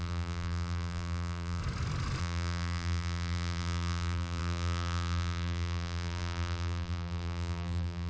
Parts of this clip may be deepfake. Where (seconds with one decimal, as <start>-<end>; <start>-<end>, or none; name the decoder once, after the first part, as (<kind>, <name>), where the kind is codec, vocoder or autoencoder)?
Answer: 0.0-1.6 (vocoder, BigVGAN v2); 2.2-8.1